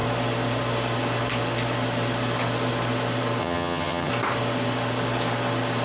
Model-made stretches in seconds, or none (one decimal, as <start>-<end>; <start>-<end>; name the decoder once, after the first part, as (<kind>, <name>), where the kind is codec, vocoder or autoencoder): 3.4-4.1 (vocoder, HiFi-GAN)